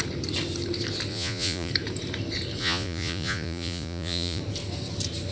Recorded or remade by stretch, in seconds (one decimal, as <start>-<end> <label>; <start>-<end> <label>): 0.0-1.1 recorded; 1.1-1.7 remade; 1.7-2.6 recorded; 2.6-4.4 remade; 4.4-5.3 recorded